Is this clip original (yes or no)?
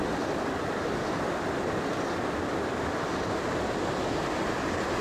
yes